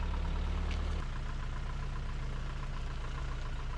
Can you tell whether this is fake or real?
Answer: real